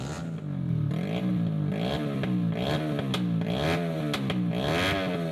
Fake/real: real